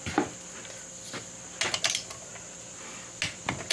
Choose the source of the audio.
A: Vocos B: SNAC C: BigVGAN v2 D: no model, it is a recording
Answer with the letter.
D